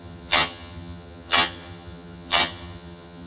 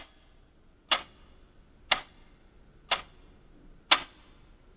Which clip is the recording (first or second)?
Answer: second